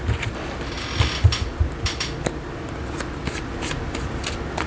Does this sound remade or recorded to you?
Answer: recorded